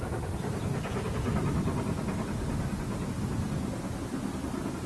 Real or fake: real